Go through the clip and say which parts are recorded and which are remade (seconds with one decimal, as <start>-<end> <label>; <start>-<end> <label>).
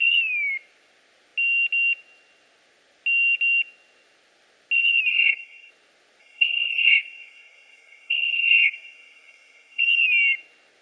0.0-5.1 recorded; 5.1-5.7 remade; 5.7-6.2 recorded; 6.2-9.8 remade; 9.8-10.8 recorded